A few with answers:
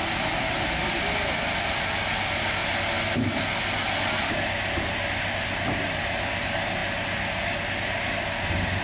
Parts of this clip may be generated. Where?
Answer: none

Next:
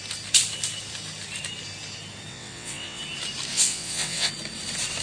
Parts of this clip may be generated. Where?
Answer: 2.3-3.0; 3.5-4.3